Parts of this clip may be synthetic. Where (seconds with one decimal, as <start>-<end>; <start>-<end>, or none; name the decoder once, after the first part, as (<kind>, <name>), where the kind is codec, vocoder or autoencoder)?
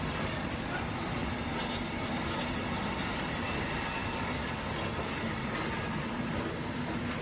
none